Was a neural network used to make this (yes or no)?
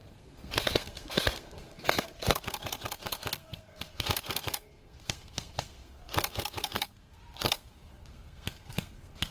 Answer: yes